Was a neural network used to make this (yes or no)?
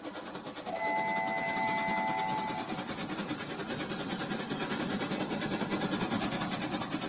no